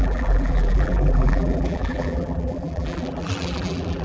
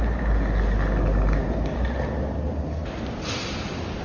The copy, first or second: first